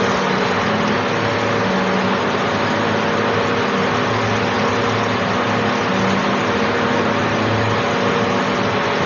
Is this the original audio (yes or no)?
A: yes